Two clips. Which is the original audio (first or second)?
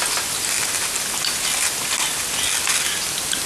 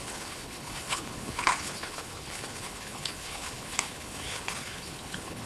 first